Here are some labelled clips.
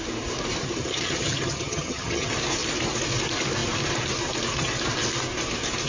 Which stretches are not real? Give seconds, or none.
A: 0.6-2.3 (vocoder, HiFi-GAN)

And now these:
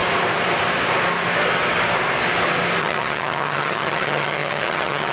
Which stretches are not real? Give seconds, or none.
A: 2.8-5.1 (vocoder, HiFi-GAN)

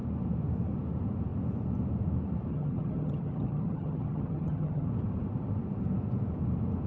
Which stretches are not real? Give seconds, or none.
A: 2.5-4.9 (vocoder, HiFi-GAN)

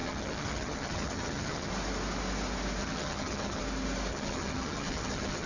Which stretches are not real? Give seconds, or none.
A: 0.0-1.7 (vocoder, HiFi-GAN); 2.8-3.6; 4.1-5.5

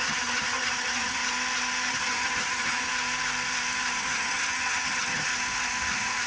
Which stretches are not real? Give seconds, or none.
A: 0.0-1.2 (vocoder, HiFi-GAN); 1.9-2.9; 4.0-5.3

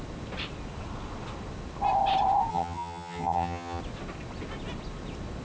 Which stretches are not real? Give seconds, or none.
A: 2.5-3.8 (vocoder, HiFi-GAN)

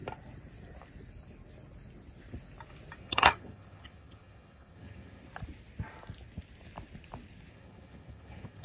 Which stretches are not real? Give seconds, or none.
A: 3.0-5.3 (vocoder, HiFi-GAN); 7.5-8.6

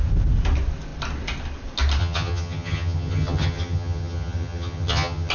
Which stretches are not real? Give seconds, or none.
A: 2.0-5.3 (vocoder, HiFi-GAN)